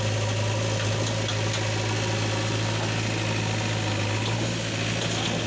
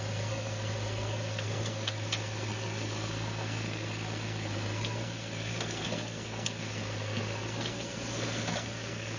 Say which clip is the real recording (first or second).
first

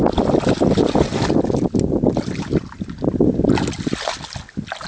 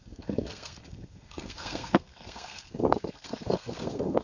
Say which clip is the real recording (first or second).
first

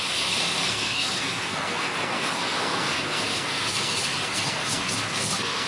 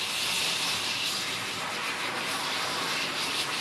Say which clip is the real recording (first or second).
second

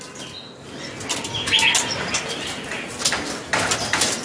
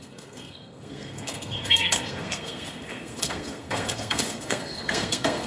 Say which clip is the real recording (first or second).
first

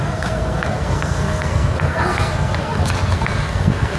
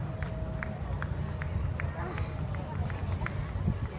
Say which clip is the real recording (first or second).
second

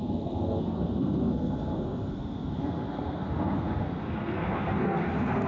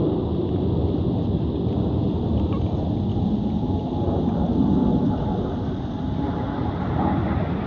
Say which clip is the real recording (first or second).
second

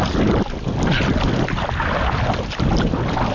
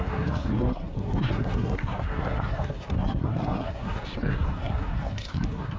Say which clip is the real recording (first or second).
first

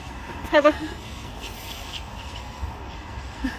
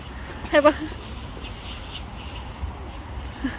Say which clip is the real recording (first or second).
second